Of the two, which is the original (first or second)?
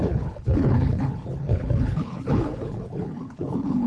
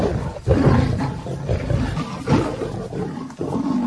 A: second